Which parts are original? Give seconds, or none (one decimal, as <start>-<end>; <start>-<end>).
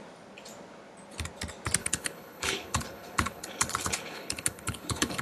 0.0-1.8